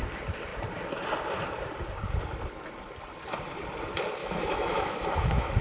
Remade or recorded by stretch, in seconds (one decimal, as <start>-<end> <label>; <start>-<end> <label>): 0.0-4.2 recorded; 4.2-5.6 remade